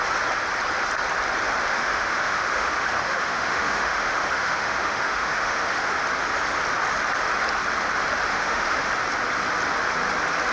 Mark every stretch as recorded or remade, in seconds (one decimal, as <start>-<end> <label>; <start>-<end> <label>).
0.0-1.7 recorded; 1.7-6.0 remade; 6.0-8.3 recorded; 8.3-8.9 remade; 8.9-10.5 recorded